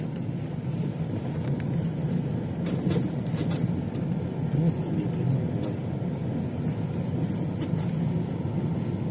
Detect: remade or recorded recorded